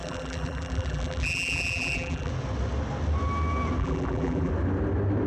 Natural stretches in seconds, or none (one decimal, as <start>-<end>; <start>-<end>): 2.3-3.8; 4.5-5.3